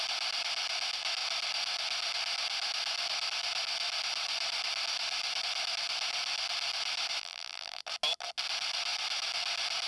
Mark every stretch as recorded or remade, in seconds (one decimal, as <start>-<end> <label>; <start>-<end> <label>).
0.0-7.2 recorded; 7.2-7.8 remade; 7.8-9.9 recorded